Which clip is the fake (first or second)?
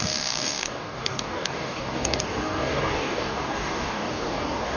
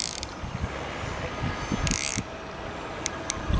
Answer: first